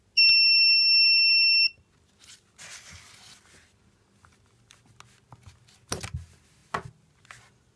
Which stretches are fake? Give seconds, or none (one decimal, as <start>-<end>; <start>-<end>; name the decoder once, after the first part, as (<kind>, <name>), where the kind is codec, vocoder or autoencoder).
none